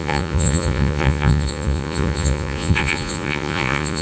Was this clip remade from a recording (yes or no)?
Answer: yes